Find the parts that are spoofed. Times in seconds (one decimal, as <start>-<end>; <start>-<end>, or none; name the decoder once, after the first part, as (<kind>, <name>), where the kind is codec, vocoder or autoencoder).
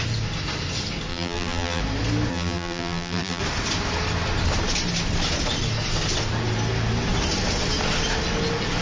1.1-1.8 (vocoder, BigVGAN v2); 2.3-3.4